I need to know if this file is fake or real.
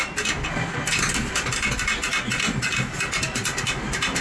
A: real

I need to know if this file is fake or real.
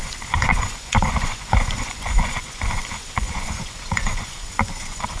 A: fake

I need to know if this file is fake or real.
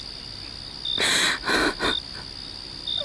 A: real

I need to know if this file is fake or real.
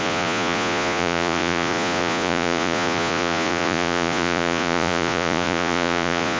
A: fake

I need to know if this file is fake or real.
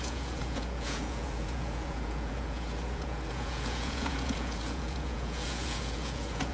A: fake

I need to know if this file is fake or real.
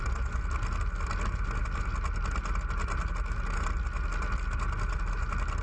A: real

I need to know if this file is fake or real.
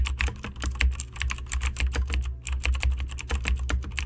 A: real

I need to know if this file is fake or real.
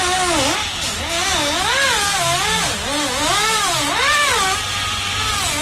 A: real